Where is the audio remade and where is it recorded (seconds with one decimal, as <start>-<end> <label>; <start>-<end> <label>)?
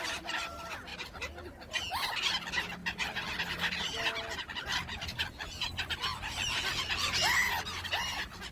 0.0-6.1 recorded; 6.1-6.6 remade; 6.6-8.5 recorded